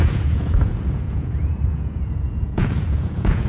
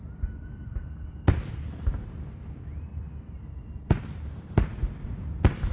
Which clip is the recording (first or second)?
second